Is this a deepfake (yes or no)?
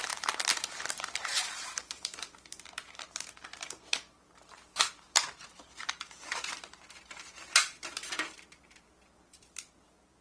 yes